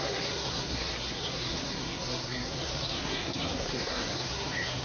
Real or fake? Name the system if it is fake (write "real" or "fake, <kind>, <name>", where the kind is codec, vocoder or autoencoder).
fake, codec, SNAC